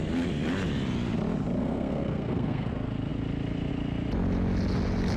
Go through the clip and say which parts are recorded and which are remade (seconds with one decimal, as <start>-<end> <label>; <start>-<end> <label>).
0.0-1.6 recorded; 1.6-2.7 remade; 2.7-5.2 recorded